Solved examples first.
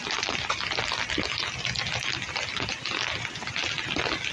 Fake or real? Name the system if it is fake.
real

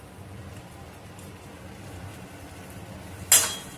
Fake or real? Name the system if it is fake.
real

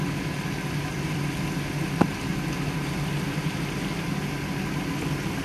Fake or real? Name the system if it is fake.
real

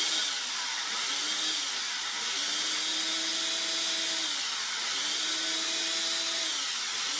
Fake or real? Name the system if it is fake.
real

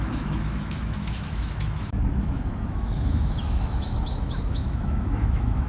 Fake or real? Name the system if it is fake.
fake, autoencoder, DAC-VAE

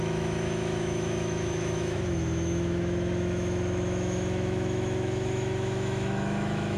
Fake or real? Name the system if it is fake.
fake, autoencoder, DAC-VAE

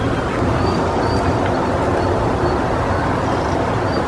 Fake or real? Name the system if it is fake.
real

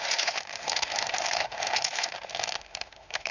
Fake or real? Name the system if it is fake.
fake, autoencoder, DAC-VAE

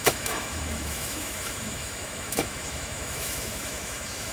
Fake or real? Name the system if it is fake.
fake, autoencoder, DAC-VAE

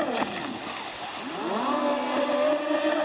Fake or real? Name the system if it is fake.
real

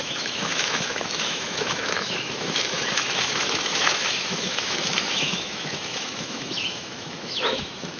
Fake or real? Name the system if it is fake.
fake, autoencoder, DAC-VAE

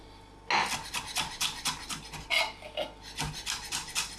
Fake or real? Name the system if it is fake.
real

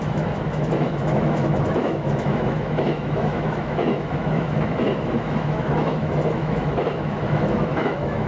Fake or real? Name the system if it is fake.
fake, autoencoder, DAC-VAE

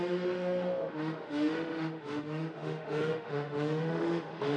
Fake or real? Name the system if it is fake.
fake, autoencoder, DAC-VAE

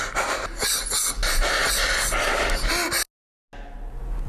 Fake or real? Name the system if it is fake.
real